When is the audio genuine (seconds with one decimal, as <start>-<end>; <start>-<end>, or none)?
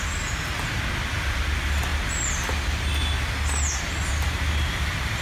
0.0-5.2